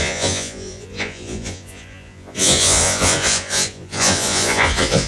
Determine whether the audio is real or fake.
fake